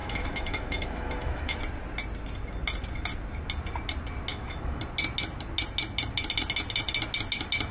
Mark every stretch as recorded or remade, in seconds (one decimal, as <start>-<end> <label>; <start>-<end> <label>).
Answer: 0.0-1.6 remade; 1.6-4.3 recorded; 4.3-4.8 remade; 4.8-7.7 recorded